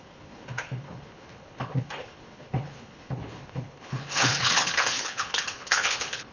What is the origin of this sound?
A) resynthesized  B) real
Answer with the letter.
A